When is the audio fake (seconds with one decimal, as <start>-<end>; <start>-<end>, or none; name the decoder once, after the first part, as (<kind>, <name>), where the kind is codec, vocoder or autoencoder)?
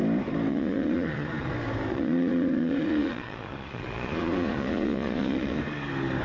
0.5-1.5 (vocoder, Vocos); 1.9-5.6